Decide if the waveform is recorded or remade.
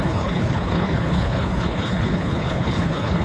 remade